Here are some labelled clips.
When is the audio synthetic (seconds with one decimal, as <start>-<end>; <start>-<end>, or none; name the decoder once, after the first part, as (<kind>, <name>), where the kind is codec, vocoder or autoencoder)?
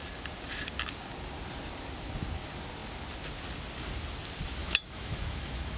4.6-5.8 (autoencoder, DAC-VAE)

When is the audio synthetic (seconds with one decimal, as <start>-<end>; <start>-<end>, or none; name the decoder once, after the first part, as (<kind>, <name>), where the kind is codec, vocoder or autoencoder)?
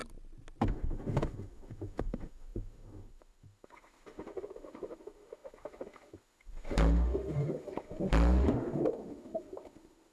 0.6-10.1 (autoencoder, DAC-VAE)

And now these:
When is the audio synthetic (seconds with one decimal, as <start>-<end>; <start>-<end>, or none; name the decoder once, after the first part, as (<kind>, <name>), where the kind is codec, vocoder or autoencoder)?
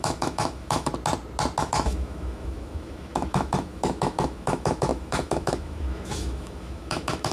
0.0-0.9 (autoencoder, DAC-VAE); 1.6-7.3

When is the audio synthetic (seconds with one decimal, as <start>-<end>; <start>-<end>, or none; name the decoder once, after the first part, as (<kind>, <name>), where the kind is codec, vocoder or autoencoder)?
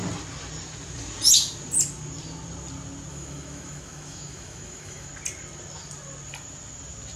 3.1-5.1 (autoencoder, DAC-VAE)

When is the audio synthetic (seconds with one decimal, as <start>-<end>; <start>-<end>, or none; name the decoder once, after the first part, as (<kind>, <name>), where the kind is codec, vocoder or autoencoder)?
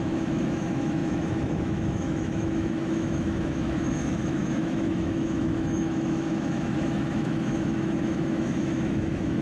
0.0-9.4 (autoencoder, DAC-VAE)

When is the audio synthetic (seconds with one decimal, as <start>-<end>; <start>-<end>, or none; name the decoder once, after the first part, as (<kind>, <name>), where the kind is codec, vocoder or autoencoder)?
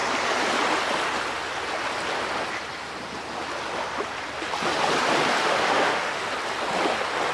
5.4-6.3 (autoencoder, DAC-VAE)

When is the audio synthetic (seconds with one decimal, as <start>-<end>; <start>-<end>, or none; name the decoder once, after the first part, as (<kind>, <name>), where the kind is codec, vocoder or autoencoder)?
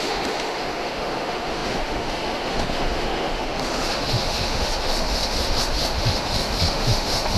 0.0-7.4 (autoencoder, DAC-VAE)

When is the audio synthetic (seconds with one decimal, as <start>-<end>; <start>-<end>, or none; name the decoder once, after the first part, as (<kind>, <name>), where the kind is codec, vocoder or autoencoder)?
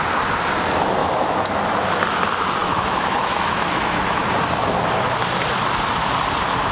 1.0-1.6 (autoencoder, DAC-VAE); 2.6-4.2